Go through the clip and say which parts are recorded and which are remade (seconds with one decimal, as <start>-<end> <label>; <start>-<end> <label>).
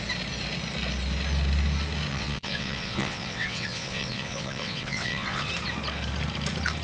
0.0-2.1 recorded; 2.1-5.5 remade; 5.5-6.8 recorded